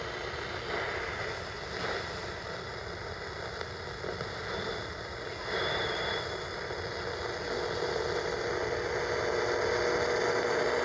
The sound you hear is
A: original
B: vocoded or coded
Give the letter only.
A